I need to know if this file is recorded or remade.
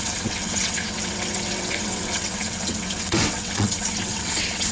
remade